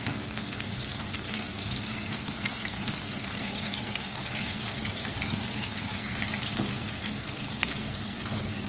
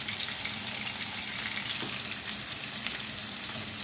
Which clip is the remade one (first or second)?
first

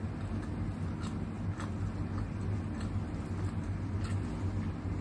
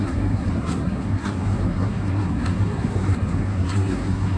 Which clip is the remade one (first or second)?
second